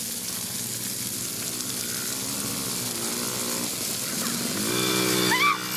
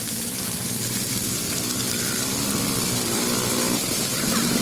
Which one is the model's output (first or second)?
second